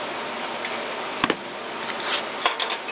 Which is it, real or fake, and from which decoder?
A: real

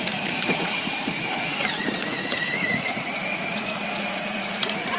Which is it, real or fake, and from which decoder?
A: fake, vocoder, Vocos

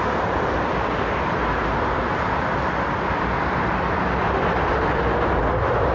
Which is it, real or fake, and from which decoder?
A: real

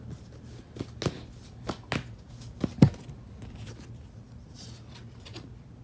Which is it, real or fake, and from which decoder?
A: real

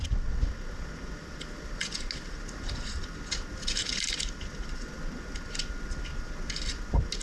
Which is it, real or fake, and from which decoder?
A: real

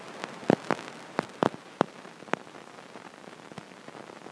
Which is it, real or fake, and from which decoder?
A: real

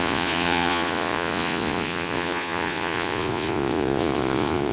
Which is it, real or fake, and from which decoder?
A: fake, vocoder, Vocos